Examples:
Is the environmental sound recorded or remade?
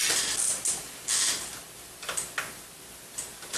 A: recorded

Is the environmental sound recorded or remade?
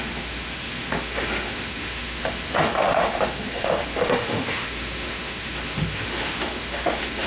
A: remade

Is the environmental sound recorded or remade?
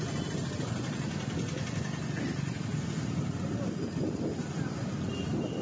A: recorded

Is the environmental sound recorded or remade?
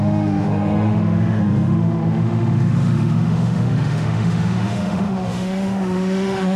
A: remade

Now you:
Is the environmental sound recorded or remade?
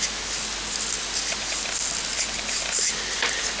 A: recorded